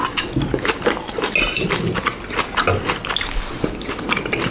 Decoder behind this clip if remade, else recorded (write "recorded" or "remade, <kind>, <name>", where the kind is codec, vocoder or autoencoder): recorded